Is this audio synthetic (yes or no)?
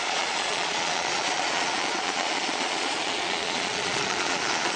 yes